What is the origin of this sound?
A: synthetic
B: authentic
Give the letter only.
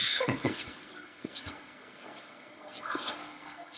A